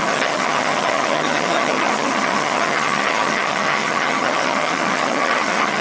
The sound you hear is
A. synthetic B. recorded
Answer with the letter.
A